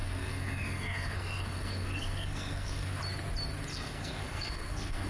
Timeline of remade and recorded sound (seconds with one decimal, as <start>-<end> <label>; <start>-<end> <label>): 0.0-3.0 remade; 3.0-3.7 recorded; 3.7-5.1 remade